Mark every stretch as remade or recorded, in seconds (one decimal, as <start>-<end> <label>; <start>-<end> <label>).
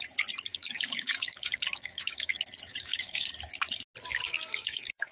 0.0-0.5 recorded; 0.5-2.3 remade; 2.3-2.7 recorded; 2.7-3.3 remade; 3.3-4.1 recorded; 4.1-5.1 remade